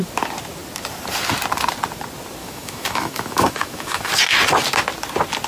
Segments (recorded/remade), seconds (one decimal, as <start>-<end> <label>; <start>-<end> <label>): 0.0-2.4 recorded; 2.4-4.1 remade; 4.1-5.5 recorded